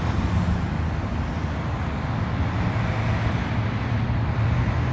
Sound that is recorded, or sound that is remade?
recorded